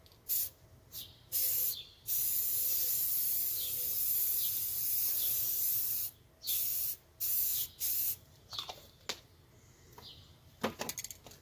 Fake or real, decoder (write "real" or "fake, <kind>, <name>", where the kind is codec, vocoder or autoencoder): real